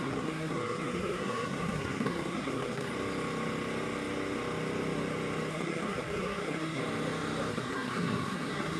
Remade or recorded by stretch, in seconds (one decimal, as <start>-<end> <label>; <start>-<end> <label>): 0.0-2.9 remade; 2.9-5.5 recorded; 5.5-6.8 remade; 6.8-7.5 recorded; 7.5-8.8 remade